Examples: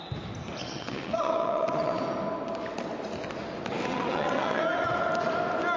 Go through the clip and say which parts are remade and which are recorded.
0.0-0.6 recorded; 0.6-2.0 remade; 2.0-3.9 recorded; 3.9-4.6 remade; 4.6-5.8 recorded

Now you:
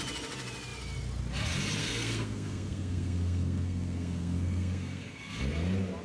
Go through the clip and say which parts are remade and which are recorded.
0.0-1.8 recorded; 1.8-5.4 remade; 5.4-6.0 recorded

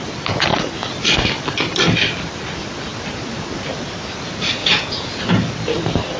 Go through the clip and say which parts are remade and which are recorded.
0.0-4.6 recorded; 4.6-5.2 remade; 5.2-6.2 recorded